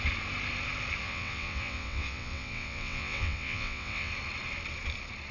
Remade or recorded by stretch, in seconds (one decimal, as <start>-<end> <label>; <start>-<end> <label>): 0.0-1.0 recorded; 1.0-4.1 remade; 4.1-5.3 recorded